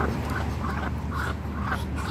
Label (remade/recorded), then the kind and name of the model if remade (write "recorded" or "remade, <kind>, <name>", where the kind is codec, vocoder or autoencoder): recorded